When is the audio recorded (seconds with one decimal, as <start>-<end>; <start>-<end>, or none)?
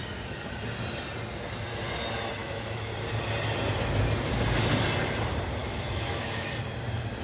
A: 0.0-2.4; 2.9-5.6; 6.5-7.2